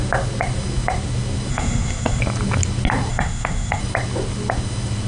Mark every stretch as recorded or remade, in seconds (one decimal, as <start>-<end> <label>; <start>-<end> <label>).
0.0-1.5 recorded; 1.5-2.2 remade; 2.2-3.1 recorded; 3.1-3.8 remade; 3.8-5.1 recorded